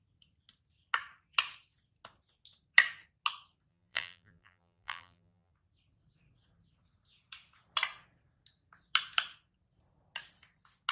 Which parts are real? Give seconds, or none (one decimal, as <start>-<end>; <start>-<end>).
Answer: 0.0-3.7; 5.5-10.9